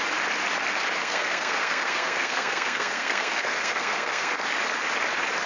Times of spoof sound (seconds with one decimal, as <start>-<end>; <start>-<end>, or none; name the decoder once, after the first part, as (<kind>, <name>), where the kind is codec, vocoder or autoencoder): 1.0-4.3 (codec, SNAC)

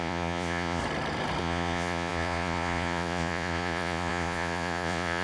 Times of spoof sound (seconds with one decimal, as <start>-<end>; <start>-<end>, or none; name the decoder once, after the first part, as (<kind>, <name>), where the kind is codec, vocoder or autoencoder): 0.0-0.8 (vocoder, Vocos); 1.4-5.2

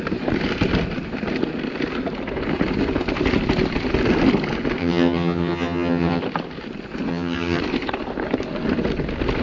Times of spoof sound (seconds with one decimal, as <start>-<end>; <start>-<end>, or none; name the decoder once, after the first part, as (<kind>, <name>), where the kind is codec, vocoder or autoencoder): 4.8-6.2 (vocoder, HiFi-GAN); 7.1-7.6

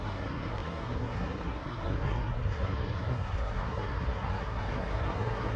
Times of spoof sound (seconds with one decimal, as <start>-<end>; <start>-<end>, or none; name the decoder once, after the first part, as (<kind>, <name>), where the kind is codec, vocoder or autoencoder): 0.0-5.6 (codec, SNAC)

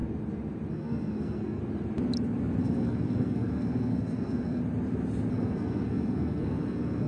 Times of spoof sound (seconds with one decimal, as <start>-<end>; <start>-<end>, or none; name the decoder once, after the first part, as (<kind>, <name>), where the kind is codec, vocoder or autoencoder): 0.7-1.6 (codec, SNAC); 2.6-4.6; 5.3-7.1

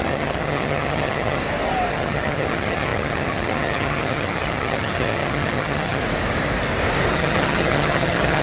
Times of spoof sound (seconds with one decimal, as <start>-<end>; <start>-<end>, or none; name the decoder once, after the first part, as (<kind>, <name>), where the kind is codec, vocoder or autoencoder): 0.0-1.4 (vocoder, HiFi-GAN); 1.9-6.0; 7.1-8.4

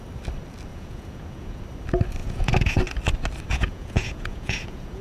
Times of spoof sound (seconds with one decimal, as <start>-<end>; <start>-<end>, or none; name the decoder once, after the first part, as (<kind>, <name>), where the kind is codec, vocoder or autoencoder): 0.7-1.6 (vocoder, Vocos); 2.2-2.8; 3.5-5.0